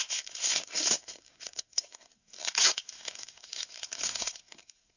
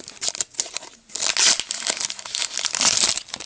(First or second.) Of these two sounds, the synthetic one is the first